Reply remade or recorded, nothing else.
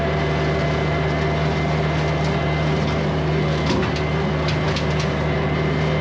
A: recorded